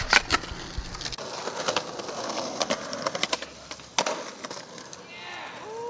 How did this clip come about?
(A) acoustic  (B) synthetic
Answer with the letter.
A